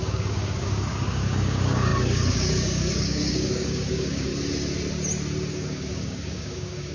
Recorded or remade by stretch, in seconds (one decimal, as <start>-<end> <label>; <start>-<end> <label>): 0.0-4.3 remade; 4.3-5.5 recorded; 5.5-6.9 remade